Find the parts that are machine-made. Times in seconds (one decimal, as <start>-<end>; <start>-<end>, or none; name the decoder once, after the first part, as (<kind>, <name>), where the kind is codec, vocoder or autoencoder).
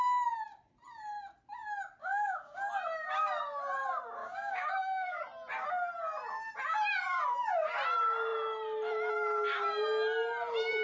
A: 2.0-2.6 (codec, DAC); 4.2-5.2